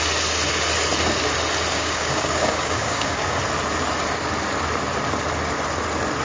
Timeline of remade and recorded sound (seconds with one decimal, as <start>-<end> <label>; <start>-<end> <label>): 0.0-1.7 recorded; 1.7-3.4 remade; 3.4-6.2 recorded